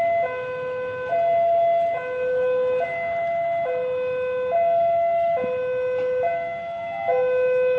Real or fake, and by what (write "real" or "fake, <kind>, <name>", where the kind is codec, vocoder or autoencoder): real